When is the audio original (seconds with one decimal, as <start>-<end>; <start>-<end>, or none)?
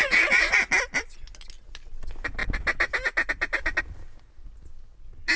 0.7-5.4